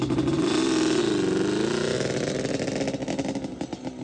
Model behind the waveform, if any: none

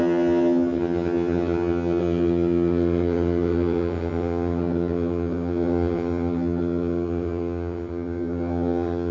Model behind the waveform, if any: vocoder, HiFi-GAN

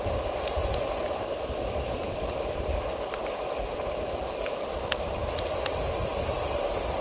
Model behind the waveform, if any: vocoder, BigVGAN v2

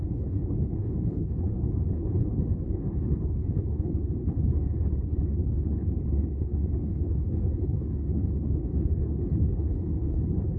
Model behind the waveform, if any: codec, HILCodec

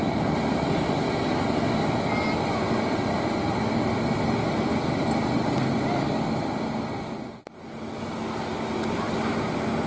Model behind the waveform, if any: none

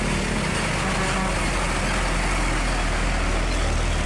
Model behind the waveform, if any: none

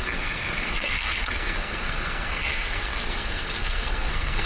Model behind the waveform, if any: codec, SNAC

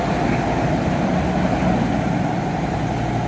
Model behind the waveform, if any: none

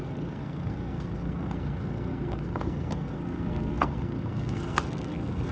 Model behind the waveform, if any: codec, SNAC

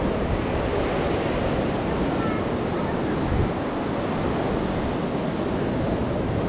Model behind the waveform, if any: none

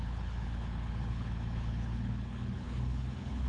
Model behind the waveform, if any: codec, HILCodec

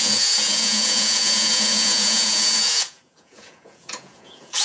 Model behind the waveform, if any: vocoder, Vocos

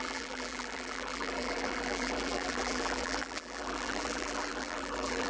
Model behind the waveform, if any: vocoder, BigVGAN v2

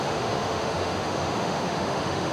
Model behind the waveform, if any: autoencoder, DAC-VAE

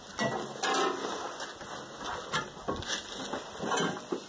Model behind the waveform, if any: none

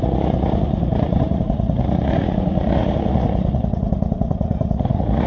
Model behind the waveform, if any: vocoder, Vocos